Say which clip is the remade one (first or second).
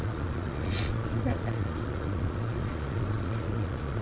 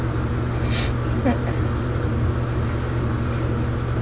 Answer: first